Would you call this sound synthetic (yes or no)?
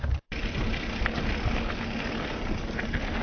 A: no